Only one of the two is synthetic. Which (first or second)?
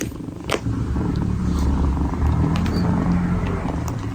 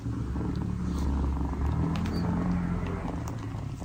first